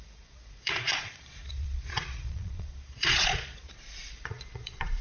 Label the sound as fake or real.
fake